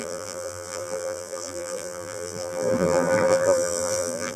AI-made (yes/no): yes